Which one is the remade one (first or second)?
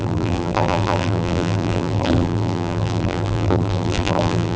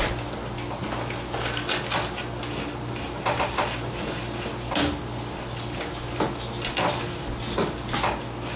first